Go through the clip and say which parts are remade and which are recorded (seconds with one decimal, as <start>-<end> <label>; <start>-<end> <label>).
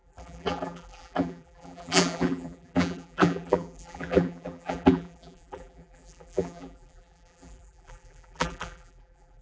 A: 0.0-9.4 remade